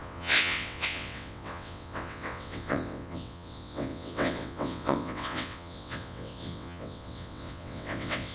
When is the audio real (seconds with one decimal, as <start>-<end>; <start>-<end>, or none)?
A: none